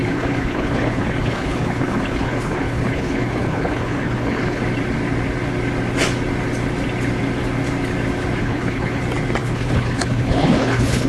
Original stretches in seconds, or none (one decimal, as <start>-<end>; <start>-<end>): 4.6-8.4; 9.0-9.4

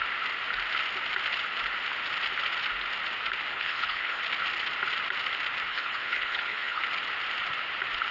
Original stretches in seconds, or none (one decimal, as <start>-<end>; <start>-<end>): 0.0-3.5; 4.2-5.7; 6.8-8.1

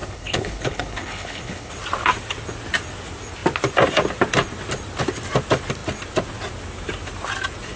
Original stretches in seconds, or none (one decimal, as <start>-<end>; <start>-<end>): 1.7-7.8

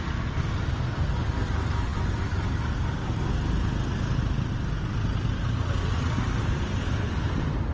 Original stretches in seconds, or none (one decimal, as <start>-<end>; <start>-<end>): 0.0-6.8; 7.3-7.7

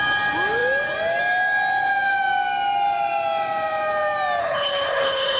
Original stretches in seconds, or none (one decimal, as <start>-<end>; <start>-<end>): 0.0-4.4